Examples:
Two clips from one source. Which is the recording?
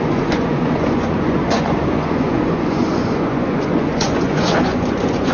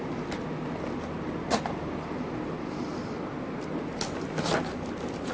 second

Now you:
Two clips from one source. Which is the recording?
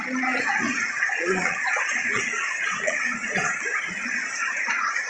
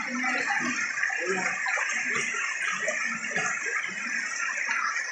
second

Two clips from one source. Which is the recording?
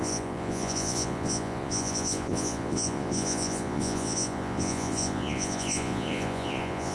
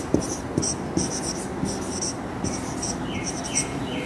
second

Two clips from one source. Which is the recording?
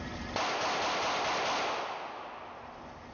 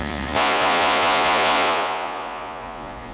first